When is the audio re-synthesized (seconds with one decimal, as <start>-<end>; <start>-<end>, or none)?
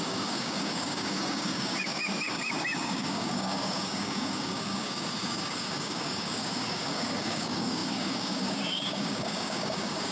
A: 0.0-10.1